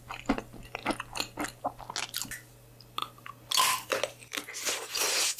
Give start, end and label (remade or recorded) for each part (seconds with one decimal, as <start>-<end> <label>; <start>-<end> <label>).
0.0-5.4 recorded